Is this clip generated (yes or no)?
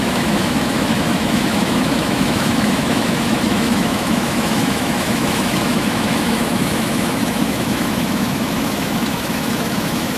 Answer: yes